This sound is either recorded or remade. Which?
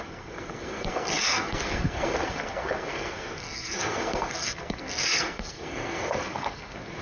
remade